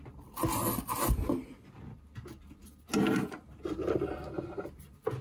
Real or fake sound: real